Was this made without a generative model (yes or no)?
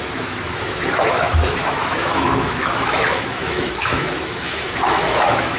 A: no